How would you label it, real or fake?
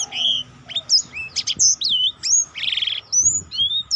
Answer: real